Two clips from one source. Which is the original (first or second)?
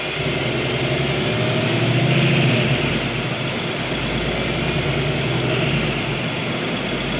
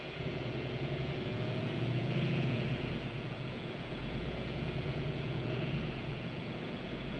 first